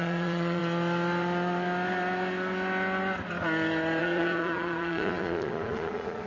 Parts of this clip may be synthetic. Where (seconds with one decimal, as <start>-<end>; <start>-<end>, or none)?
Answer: 0.0-0.6; 4.0-6.3

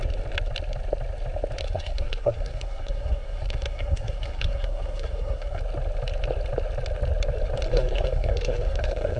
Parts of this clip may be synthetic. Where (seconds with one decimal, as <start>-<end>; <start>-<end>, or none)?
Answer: 1.6-5.6; 7.7-9.2

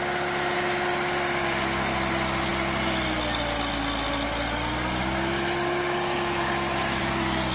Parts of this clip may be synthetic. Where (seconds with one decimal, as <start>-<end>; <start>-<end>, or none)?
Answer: none

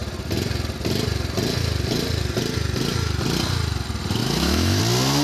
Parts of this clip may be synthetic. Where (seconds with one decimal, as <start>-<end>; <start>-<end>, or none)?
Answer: 4.2-4.8

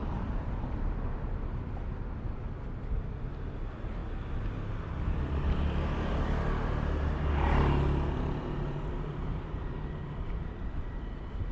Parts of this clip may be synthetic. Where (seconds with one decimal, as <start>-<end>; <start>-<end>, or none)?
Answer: 0.0-1.1; 9.2-10.5

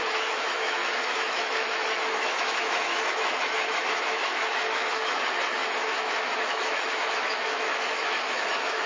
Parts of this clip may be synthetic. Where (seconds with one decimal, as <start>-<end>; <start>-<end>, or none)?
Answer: 0.0-8.9

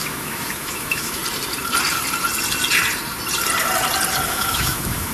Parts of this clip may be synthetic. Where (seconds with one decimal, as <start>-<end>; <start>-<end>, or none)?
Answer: 0.0-1.2; 4.3-5.1